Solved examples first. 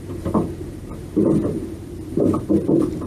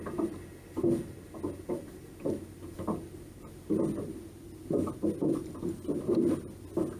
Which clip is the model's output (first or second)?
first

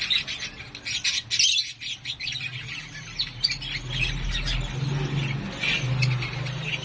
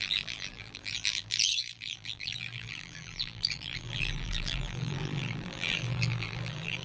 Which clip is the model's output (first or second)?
second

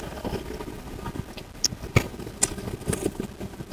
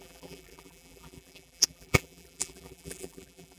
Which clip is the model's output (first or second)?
second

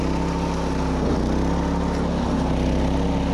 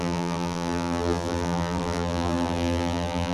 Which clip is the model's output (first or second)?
second